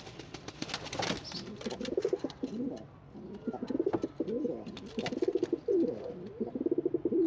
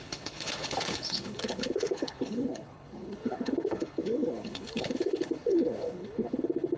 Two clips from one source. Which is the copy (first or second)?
second